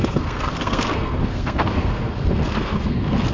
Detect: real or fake fake